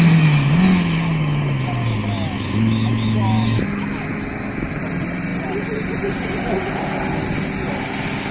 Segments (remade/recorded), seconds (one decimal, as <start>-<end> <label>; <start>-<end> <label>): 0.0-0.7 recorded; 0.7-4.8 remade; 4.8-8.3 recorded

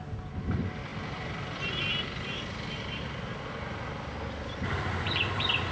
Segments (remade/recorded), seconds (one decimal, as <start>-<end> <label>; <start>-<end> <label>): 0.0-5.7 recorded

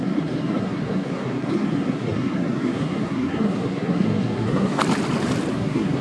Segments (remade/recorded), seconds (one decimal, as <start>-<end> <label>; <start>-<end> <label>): 0.0-4.8 remade; 4.8-5.5 recorded; 5.5-6.0 remade

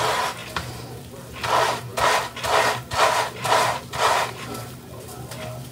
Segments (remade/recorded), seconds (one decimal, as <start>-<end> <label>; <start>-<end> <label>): 0.0-5.7 recorded

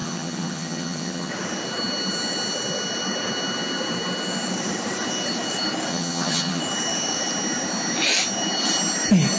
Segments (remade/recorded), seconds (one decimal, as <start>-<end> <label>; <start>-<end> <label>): 0.0-1.3 remade; 1.3-5.9 recorded; 5.9-6.6 remade; 6.6-9.4 recorded

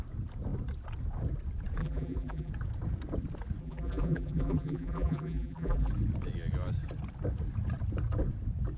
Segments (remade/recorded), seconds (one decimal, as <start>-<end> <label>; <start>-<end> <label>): 0.0-1.8 recorded; 1.8-2.5 remade; 2.5-3.6 recorded; 3.6-5.9 remade; 5.9-8.8 recorded

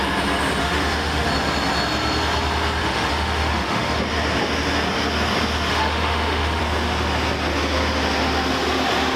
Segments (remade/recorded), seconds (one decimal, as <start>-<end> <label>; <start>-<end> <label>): 0.0-0.6 recorded; 0.6-1.3 remade; 1.3-2.8 recorded; 2.8-4.0 remade; 4.0-5.7 recorded; 5.7-6.6 remade; 6.6-9.2 recorded

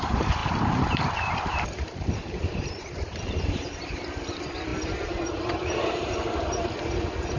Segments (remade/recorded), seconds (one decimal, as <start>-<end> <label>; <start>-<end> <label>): 0.0-7.4 remade